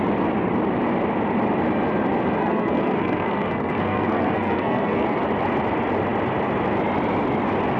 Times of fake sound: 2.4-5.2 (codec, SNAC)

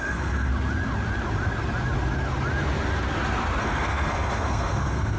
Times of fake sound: 0.0-0.5 (codec, SNAC); 3.6-5.2

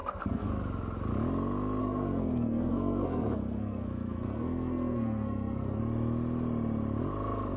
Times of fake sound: 0.0-0.5 (codec, SNAC); 1.8-5.8

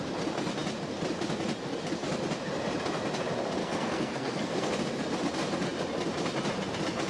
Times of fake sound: 3.6-4.7 (codec, SNAC)

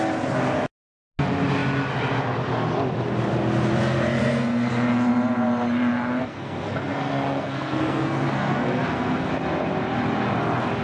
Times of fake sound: 4.2-4.7 (codec, SNAC); 6.2-9.3

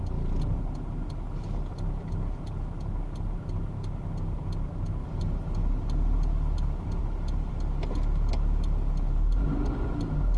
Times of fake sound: none